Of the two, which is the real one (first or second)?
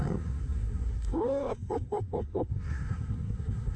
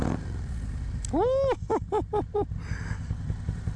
second